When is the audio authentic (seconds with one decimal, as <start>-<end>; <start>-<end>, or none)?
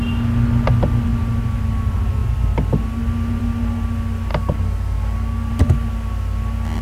0.0-4.3; 5.5-6.8